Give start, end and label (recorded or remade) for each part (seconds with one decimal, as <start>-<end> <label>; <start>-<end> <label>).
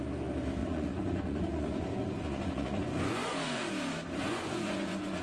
0.0-0.6 recorded; 0.6-3.7 remade; 3.7-4.2 recorded; 4.2-5.2 remade